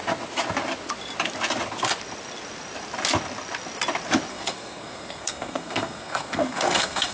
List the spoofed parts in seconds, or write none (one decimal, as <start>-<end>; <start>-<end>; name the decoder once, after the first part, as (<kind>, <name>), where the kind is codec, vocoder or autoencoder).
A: 4.3-7.1 (codec, SNAC)